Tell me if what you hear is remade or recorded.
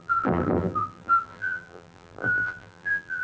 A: remade